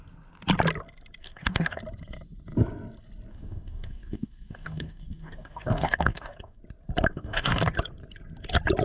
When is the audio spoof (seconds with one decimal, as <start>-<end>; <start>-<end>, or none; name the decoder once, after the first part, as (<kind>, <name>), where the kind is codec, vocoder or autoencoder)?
1.2-1.8 (codec, DAC); 3.3-6.6; 7.1-7.7